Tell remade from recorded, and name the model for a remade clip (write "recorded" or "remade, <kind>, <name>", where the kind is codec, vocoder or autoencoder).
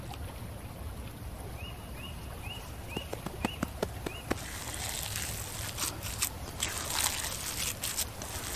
recorded